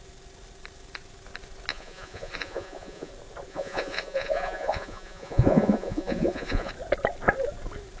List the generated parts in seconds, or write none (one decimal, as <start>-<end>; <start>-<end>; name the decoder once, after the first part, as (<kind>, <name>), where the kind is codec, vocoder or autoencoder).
1.7-3.1 (vocoder, Vocos); 3.5-6.7